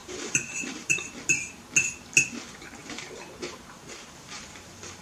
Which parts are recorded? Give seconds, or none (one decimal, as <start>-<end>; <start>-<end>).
1.0-2.8